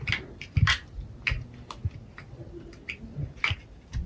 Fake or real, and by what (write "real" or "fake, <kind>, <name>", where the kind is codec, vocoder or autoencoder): real